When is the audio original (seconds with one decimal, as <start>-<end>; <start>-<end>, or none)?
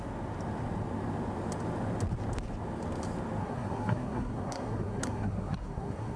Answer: 0.0-3.4